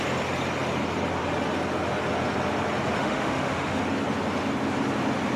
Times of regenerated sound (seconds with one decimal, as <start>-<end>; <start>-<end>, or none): 3.0-3.8